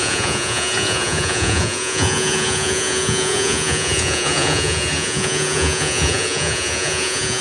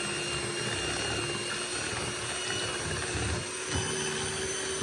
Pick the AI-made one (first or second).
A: first